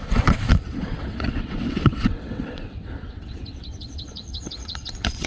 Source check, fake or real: fake